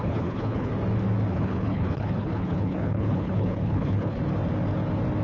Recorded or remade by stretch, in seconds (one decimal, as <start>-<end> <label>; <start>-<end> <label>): 0.0-0.7 remade; 0.7-1.3 recorded; 1.3-4.2 remade; 4.2-5.2 recorded